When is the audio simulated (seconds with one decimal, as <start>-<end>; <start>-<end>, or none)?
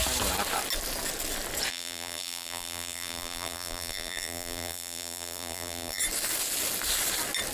1.7-6.0